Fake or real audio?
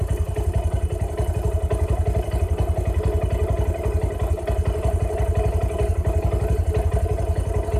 real